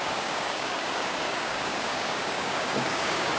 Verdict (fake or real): fake